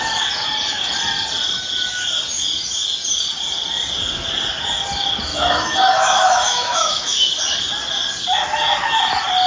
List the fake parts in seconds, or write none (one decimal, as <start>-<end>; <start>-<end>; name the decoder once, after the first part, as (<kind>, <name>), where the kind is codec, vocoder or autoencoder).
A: 5.3-7.4 (autoencoder, DAC-VAE)